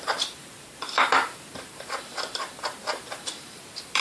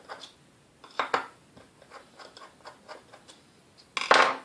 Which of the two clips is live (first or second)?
second